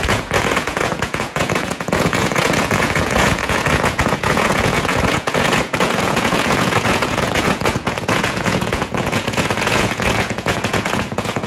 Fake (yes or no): yes